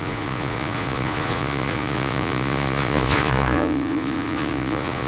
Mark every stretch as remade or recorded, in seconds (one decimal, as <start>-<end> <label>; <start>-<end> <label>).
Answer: 0.0-5.1 remade